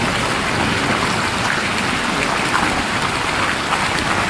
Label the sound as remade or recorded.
recorded